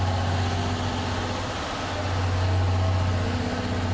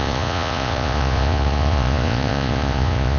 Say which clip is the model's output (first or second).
second